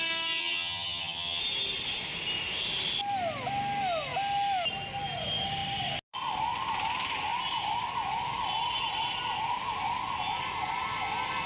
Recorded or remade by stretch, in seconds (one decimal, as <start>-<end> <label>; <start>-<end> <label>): 0.0-0.4 recorded; 0.4-1.4 remade; 1.4-11.5 recorded